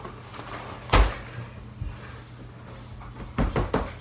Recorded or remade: recorded